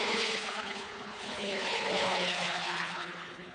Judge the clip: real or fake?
fake